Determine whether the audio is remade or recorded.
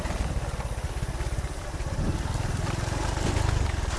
recorded